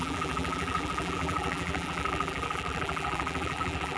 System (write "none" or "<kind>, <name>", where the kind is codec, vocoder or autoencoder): vocoder, BigVGAN v2